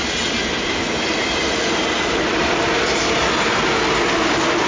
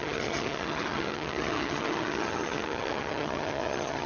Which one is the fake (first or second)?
second